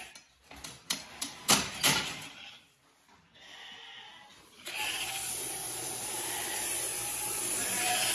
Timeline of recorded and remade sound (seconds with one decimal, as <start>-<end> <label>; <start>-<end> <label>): 0.0-0.4 recorded; 0.4-2.4 remade; 2.4-4.3 recorded; 4.3-8.1 remade